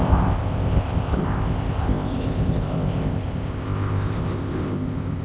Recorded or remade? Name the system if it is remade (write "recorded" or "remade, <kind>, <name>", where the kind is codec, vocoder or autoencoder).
remade, codec, ZipCodec